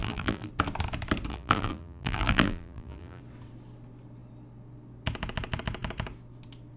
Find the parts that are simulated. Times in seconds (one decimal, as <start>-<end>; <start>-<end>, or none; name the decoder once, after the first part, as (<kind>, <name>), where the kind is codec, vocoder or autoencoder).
0.0-0.5 (vocoder, BigVGAN v2); 1.3-3.2